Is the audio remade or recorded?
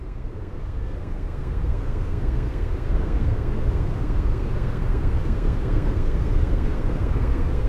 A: remade